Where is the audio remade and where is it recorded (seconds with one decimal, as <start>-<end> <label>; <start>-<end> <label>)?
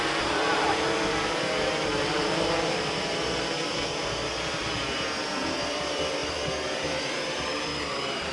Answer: 0.0-8.3 remade